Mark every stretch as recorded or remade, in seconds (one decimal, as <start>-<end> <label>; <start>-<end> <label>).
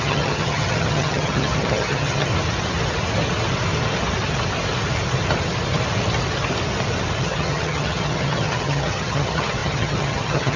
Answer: 0.0-2.3 remade; 2.3-7.2 recorded; 7.2-10.6 remade